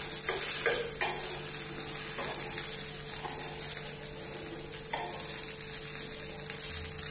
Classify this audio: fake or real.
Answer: real